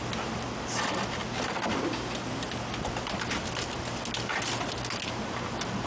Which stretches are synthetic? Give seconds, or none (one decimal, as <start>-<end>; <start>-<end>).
none